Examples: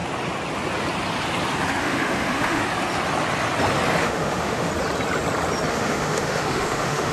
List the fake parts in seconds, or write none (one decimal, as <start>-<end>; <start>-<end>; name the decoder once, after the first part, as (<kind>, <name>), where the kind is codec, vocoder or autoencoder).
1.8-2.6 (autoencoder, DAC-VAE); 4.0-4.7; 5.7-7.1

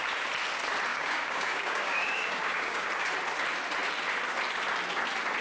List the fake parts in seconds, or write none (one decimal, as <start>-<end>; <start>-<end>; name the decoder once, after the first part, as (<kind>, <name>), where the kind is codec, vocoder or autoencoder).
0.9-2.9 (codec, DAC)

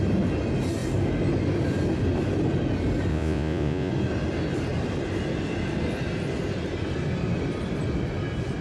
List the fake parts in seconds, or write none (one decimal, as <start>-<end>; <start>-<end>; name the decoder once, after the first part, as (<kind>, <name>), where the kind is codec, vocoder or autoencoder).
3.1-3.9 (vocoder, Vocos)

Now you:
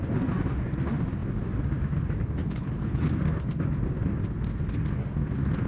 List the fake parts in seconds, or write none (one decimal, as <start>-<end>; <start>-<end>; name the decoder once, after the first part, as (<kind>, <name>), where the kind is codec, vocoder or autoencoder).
2.4-3.1 (codec, HILCodec)

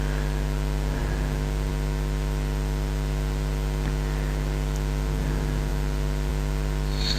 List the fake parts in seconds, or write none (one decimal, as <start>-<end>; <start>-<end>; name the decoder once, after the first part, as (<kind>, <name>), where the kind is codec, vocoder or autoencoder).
none